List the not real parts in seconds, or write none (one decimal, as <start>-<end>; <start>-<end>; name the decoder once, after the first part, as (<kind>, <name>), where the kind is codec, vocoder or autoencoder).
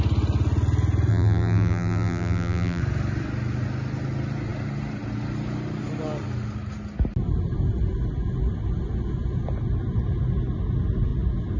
1.1-2.8 (vocoder, BigVGAN v2)